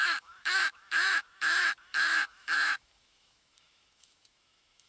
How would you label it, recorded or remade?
remade